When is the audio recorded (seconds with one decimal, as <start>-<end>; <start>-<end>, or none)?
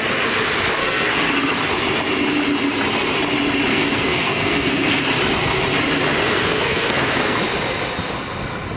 0.0-0.8; 1.3-3.7; 5.0-6.2; 7.4-8.8